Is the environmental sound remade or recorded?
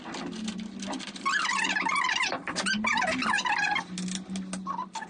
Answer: recorded